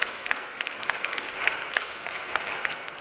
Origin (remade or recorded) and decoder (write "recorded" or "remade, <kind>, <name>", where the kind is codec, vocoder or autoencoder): remade, codec, SNAC